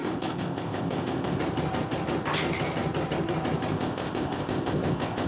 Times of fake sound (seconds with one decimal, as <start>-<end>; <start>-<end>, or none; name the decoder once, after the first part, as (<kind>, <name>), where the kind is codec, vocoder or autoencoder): 0.0-1.4 (codec, ZipCodec); 3.7-5.3